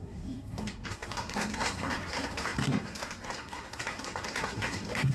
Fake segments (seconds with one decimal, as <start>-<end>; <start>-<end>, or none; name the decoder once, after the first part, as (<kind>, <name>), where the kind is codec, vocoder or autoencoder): 0.0-5.1 (codec, SNAC)